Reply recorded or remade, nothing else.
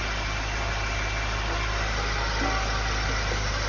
recorded